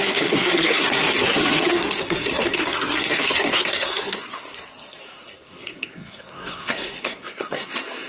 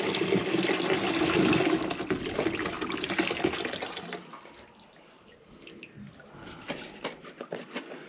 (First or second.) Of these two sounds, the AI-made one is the first